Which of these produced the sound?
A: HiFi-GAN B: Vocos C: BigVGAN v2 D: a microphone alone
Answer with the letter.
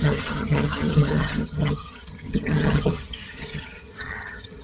A